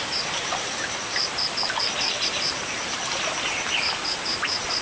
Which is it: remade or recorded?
recorded